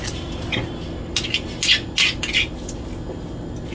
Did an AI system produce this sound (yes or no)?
no